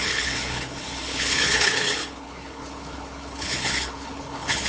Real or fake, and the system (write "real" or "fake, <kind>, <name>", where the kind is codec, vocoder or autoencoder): fake, codec, HILCodec